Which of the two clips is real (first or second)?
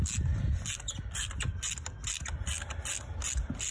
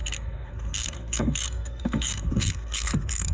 first